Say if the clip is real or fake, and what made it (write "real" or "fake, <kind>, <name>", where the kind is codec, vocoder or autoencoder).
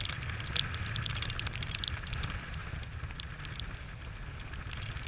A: real